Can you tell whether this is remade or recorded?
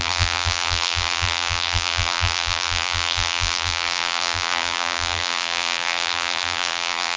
remade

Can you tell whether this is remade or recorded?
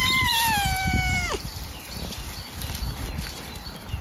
remade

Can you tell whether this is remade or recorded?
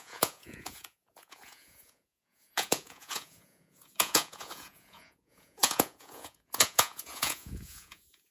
remade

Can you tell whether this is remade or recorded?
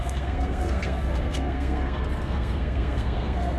remade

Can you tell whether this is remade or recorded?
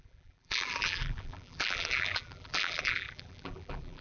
remade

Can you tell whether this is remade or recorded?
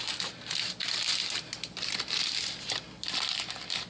recorded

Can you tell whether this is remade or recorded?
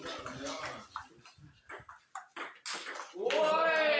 recorded